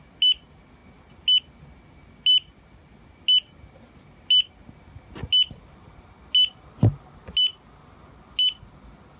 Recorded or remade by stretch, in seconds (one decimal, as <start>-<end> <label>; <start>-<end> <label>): 0.0-9.2 recorded